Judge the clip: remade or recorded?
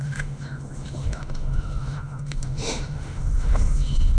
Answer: remade